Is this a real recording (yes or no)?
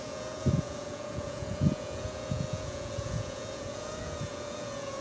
no